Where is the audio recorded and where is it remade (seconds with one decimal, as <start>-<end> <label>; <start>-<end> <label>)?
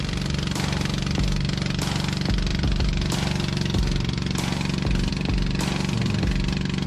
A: 0.0-6.9 recorded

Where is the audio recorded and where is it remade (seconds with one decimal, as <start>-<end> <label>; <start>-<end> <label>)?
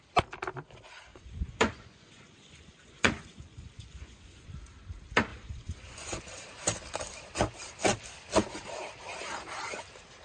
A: 0.0-1.1 recorded; 1.1-4.5 remade; 4.5-5.3 recorded; 5.3-6.2 remade; 6.2-10.2 recorded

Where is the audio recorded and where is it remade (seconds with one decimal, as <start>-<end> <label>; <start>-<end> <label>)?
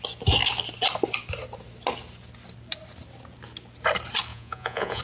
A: 0.0-4.3 recorded; 4.3-5.0 remade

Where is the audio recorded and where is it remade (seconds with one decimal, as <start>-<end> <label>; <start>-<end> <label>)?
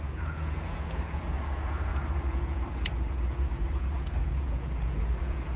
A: 0.0-5.6 remade